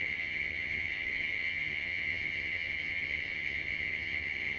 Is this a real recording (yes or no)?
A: no